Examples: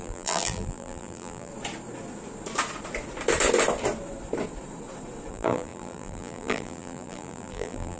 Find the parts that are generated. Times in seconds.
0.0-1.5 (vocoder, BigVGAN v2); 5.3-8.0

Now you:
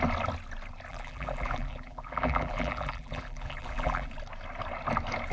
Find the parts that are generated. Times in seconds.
0.9-4.1 (vocoder, BigVGAN v2)